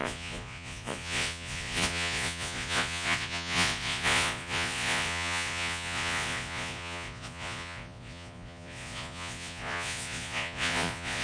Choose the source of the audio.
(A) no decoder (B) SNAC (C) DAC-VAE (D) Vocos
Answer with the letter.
D